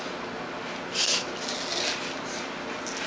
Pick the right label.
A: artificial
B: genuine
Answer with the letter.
B